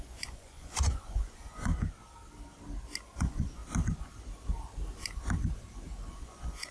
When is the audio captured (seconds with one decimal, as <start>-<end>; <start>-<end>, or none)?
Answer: 1.7-3.2; 3.6-6.1